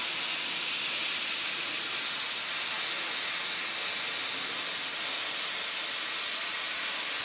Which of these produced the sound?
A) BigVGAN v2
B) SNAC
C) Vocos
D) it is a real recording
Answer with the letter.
D